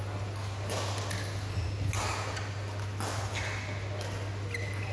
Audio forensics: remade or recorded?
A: recorded